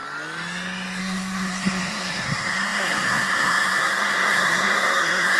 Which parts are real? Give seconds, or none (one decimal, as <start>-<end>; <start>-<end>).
0.0-1.0